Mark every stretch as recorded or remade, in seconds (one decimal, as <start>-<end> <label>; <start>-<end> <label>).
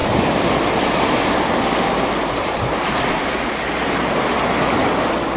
0.0-5.4 recorded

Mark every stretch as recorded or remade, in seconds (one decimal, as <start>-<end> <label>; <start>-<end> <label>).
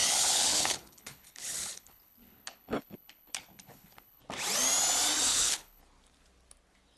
0.0-4.2 remade; 4.2-5.3 recorded; 5.3-5.8 remade; 5.8-7.0 recorded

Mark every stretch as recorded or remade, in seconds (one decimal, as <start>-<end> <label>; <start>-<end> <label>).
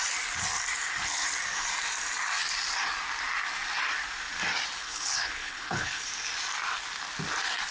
0.0-4.8 recorded; 4.8-6.1 remade; 6.1-7.7 recorded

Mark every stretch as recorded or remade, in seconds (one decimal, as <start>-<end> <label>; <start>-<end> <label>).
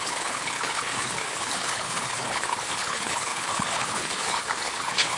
0.0-5.2 remade